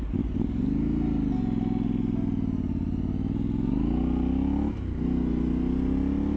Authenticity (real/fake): real